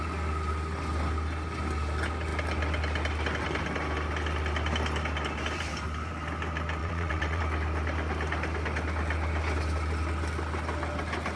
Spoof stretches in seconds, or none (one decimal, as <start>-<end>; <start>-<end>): 6.8-7.4